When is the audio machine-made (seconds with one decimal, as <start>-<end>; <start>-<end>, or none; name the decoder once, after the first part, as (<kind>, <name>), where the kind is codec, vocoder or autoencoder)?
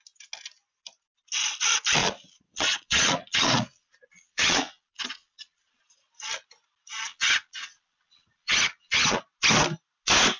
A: 2.0-5.8 (vocoder, Vocos); 7.1-9.2